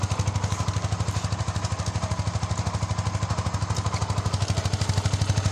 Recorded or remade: recorded